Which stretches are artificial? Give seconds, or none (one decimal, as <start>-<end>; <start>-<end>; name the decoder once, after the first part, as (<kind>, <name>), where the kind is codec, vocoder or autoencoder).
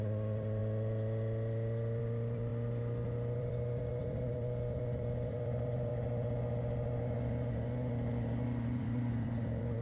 0.0-5.9 (vocoder, BigVGAN v2); 8.8-9.8